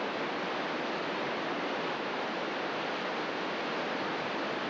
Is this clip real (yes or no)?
yes